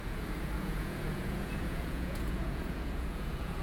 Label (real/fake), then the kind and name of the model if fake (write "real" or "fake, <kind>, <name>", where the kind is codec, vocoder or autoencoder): fake, vocoder, Vocos